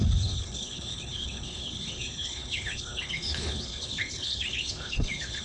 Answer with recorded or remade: remade